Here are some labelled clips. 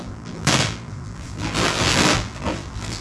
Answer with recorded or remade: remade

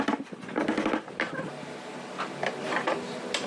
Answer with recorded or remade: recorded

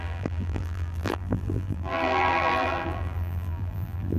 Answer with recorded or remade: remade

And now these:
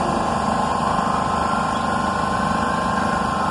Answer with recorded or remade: remade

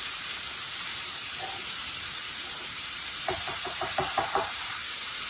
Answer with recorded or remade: remade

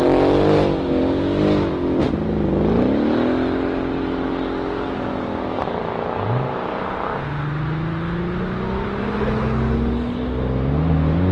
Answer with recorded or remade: recorded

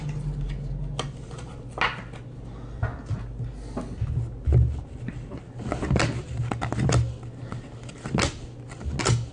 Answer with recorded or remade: recorded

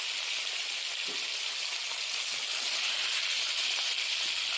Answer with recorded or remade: recorded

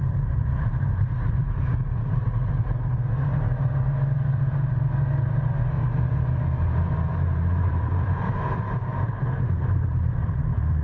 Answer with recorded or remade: remade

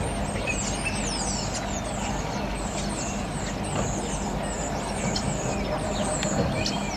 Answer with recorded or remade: recorded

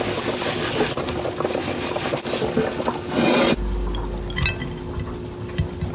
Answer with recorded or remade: recorded